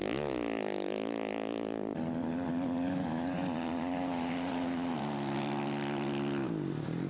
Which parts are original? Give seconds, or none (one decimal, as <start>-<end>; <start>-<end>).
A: 0.0-7.1

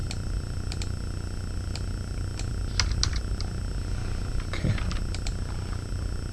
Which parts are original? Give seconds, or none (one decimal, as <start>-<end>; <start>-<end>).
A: 0.0-6.3

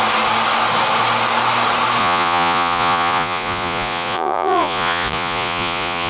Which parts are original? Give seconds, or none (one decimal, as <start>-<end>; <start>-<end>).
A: 0.0-2.0

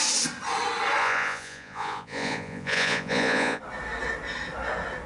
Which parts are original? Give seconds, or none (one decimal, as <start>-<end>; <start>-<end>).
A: 0.0-1.0; 3.6-5.1

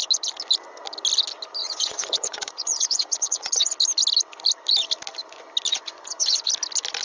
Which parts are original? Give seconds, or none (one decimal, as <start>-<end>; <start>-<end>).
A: 0.0-1.6; 3.7-5.7; 6.5-7.0

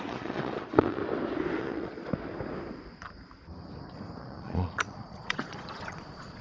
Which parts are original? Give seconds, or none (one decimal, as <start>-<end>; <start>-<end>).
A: 1.0-1.6; 2.0-4.2

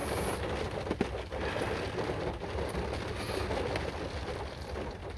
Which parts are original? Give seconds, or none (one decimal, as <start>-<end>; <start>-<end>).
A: 0.0-5.2